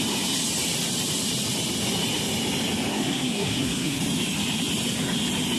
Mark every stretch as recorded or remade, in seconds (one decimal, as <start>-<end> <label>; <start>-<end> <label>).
0.0-2.9 recorded; 2.9-4.0 remade; 4.0-5.6 recorded